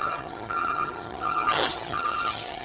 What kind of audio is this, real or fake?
fake